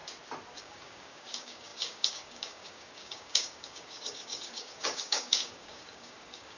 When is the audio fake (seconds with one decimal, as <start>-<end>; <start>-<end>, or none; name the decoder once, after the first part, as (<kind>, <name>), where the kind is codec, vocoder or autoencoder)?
0.6-6.6 (codec, DAC)